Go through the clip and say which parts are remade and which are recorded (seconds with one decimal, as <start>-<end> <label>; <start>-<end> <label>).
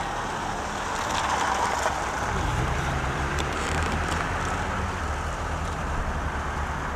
0.0-2.5 recorded; 2.5-4.3 remade; 4.3-5.6 recorded; 5.6-6.3 remade; 6.3-7.0 recorded